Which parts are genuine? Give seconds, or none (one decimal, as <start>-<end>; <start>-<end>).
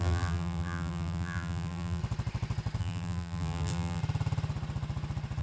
2.0-2.8; 4.0-5.4